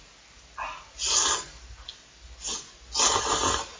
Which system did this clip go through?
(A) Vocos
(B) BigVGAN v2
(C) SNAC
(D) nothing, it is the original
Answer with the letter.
D